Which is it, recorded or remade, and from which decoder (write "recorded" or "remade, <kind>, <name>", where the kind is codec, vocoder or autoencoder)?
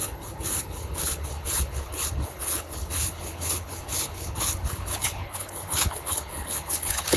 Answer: remade, codec, HILCodec